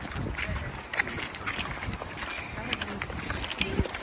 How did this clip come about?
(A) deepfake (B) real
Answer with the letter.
B